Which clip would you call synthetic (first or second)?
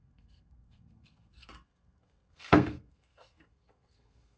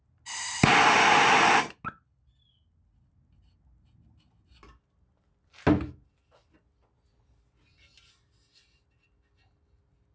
first